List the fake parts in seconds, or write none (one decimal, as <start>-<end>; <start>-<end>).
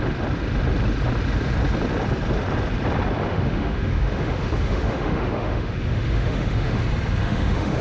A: 3.3-6.8; 7.2-7.8